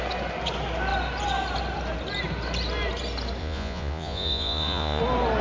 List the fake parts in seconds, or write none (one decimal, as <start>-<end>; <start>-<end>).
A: 3.4-5.0